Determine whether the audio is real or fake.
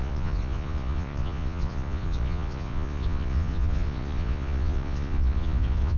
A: fake